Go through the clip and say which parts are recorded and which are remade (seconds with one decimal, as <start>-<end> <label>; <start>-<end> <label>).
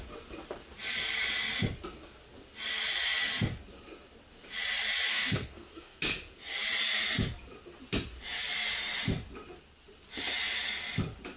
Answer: 0.0-5.1 recorded; 5.1-6.0 remade; 6.0-11.4 recorded